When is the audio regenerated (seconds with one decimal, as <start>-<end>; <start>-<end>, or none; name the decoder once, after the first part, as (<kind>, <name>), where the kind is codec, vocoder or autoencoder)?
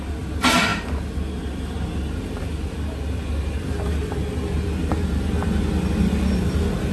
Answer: none